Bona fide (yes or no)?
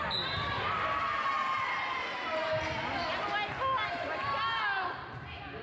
yes